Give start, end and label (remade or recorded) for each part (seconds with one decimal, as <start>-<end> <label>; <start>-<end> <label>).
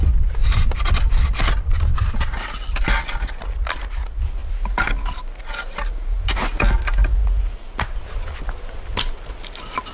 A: 0.0-9.9 recorded